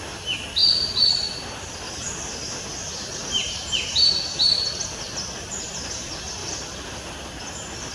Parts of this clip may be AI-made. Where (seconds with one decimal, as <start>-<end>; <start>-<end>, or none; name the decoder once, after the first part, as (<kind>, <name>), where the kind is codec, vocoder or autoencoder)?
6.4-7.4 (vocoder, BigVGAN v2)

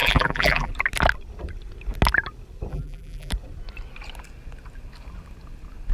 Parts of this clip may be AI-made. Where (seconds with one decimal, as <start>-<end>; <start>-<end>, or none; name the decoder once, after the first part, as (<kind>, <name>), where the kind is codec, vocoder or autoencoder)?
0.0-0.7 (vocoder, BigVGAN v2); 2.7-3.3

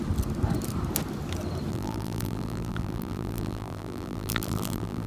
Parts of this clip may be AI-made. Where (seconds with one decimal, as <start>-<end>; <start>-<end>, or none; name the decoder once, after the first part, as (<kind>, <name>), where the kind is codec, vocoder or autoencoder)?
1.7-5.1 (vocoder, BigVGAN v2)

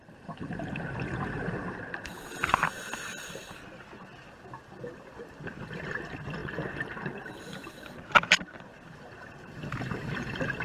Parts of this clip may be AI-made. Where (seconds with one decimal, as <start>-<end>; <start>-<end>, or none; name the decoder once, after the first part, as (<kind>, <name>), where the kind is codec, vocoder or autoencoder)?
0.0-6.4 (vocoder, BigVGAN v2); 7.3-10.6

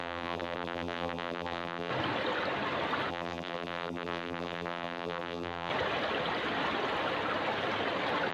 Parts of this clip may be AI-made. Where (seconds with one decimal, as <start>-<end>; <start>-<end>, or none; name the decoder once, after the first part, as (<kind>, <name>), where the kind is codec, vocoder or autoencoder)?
0.0-1.9 (vocoder, BigVGAN v2); 3.1-5.7

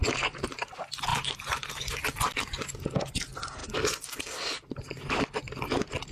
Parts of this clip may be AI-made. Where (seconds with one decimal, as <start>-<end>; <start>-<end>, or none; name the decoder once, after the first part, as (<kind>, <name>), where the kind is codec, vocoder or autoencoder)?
none

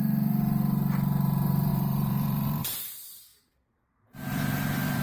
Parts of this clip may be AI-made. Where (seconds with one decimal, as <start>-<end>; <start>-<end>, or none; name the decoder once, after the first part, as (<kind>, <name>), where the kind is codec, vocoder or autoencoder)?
0.0-5.0 (vocoder, BigVGAN v2)

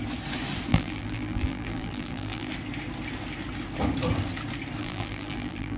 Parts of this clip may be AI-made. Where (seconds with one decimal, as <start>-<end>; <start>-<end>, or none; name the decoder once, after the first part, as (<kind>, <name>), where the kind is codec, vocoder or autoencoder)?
0.7-2.5 (vocoder, BigVGAN v2); 4.8-5.8